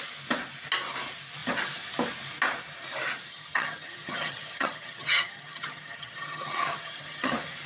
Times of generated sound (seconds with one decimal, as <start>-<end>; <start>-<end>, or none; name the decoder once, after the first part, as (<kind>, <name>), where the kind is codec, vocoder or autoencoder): 3.3-7.3 (vocoder, HiFi-GAN)